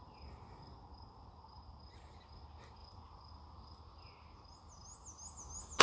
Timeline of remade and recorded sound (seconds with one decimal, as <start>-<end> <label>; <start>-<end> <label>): 0.0-5.8 recorded